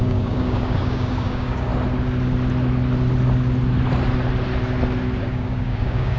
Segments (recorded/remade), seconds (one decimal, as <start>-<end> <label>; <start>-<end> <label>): 0.0-1.7 remade; 1.7-5.2 recorded; 5.2-6.2 remade